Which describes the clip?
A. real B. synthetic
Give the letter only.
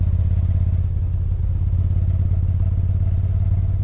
A